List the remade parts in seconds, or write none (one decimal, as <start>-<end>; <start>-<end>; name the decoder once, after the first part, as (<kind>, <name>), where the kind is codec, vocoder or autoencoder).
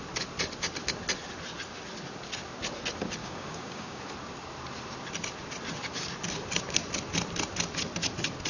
3.2-4.0 (codec, DAC)